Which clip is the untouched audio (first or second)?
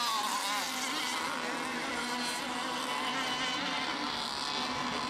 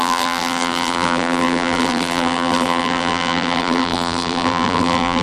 first